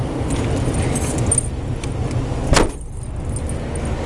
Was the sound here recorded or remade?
recorded